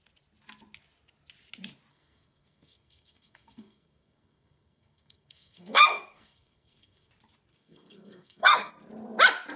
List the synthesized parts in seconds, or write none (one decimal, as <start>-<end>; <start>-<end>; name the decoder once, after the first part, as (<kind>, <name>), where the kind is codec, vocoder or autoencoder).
1.9-7.1 (codec, SNAC); 7.5-8.7